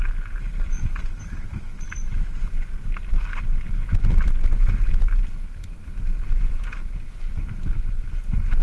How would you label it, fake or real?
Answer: real